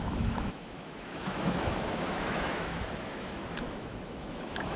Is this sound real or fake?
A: fake